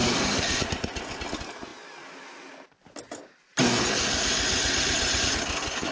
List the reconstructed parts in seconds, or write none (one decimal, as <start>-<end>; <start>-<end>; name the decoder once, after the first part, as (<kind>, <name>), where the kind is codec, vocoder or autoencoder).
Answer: none